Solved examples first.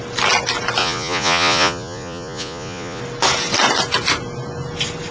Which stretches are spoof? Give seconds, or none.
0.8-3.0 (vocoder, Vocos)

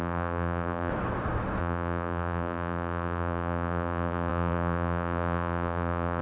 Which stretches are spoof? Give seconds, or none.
0.0-0.9 (vocoder, BigVGAN v2); 1.6-6.2

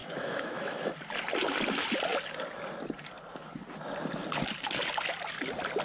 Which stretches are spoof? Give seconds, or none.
0.0-0.9 (autoencoder, DAC-VAE)

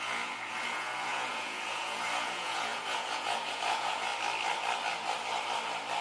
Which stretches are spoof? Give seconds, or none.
0.0-4.1 (vocoder, Vocos)

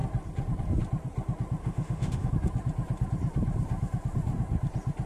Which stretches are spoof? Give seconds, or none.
1.6-2.3 (autoencoder, DAC-VAE)

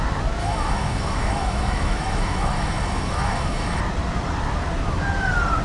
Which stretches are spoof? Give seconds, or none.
0.4-3.8 (autoencoder, DAC-VAE)

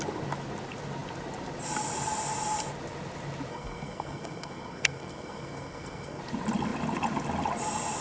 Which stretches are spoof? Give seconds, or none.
3.5-6.2 (codec, SNAC)

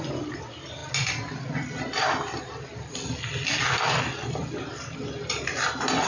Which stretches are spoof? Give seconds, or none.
none